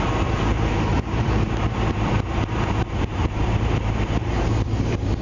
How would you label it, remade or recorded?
remade